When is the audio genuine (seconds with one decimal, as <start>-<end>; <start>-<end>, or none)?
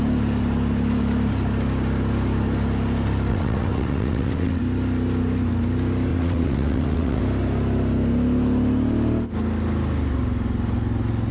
0.0-3.3; 4.6-6.1; 7.2-11.3